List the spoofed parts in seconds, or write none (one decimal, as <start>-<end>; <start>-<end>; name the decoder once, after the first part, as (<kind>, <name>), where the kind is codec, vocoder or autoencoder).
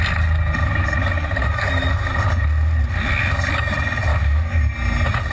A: 1.4-2.1 (autoencoder, DAC-VAE); 4.1-4.6